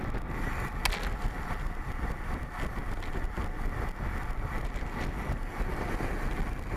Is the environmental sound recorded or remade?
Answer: recorded